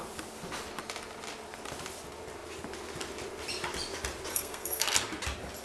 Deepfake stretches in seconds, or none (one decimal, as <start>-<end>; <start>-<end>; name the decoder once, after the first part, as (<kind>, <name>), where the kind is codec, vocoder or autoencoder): 4.3-4.9 (codec, SNAC)